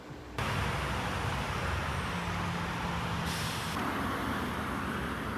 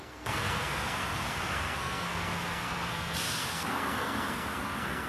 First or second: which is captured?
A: first